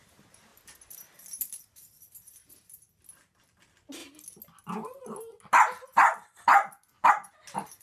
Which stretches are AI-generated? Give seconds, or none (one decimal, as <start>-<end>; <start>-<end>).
none